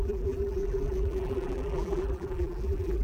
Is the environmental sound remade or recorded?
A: remade